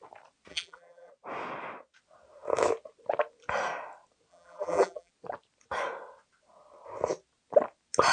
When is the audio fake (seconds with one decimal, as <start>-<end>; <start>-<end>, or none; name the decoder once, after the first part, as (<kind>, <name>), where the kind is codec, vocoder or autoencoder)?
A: 0.5-1.1 (vocoder, BigVGAN v2); 4.3-5.1